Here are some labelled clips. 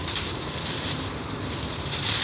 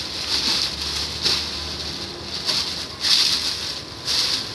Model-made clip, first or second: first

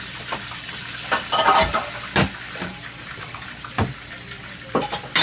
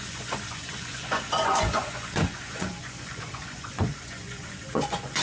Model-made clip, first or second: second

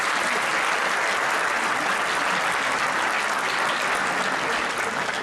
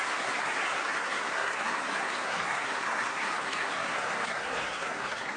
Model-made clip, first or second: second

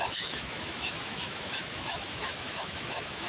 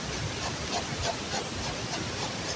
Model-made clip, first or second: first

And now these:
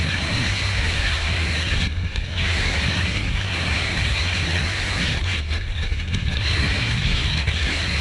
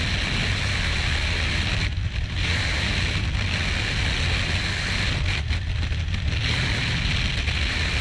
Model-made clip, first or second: first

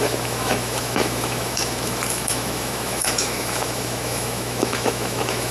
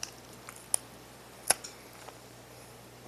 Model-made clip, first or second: first